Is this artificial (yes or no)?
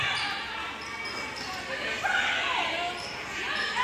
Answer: no